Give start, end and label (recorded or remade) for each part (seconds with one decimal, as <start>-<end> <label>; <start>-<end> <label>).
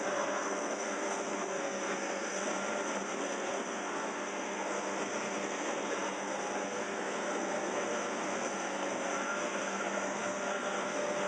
0.0-2.5 remade; 2.5-3.2 recorded; 3.2-11.3 remade